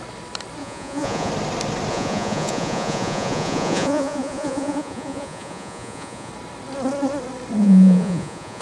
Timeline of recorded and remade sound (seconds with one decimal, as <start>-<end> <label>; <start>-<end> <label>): 0.0-0.6 recorded; 0.6-1.3 remade; 1.3-1.9 recorded; 1.9-6.3 remade; 6.3-7.6 recorded; 7.6-8.6 remade